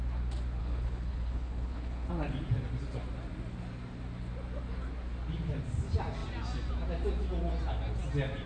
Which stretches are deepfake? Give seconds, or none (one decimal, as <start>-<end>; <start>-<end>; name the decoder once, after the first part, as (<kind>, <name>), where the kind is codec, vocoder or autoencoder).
0.6-2.1 (codec, HILCodec)